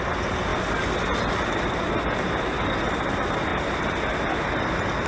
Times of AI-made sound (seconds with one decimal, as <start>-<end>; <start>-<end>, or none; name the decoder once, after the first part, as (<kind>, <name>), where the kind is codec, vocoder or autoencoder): none